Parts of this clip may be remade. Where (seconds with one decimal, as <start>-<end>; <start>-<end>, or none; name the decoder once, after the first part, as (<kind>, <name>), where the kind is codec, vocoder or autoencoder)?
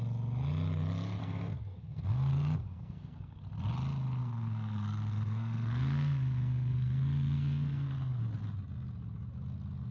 1.2-3.4 (codec, SNAC); 4.2-8.2